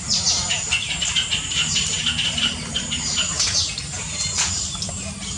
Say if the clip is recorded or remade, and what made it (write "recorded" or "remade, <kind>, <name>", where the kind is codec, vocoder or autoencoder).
remade, vocoder, BigVGAN v2